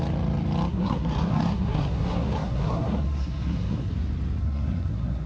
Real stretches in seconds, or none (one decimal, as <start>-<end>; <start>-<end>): 0.0-0.7; 3.9-4.4